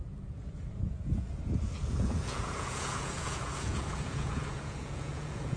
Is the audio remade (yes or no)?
yes